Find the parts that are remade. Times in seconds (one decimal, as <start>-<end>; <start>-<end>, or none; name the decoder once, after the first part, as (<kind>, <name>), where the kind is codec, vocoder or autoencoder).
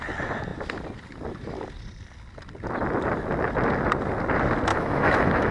4.7-5.5 (autoencoder, DAC-VAE)